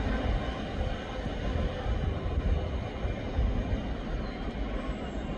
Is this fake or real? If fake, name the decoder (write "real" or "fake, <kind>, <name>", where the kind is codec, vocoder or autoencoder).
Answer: real